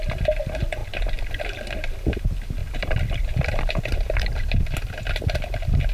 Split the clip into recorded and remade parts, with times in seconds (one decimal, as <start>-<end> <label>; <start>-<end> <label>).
0.0-0.8 recorded; 0.8-1.9 remade; 1.9-2.6 recorded; 2.6-5.2 remade; 5.2-5.9 recorded